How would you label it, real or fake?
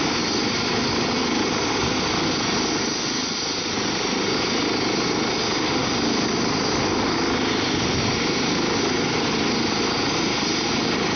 real